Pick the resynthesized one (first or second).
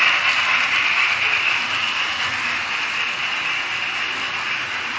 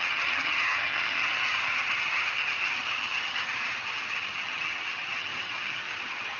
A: second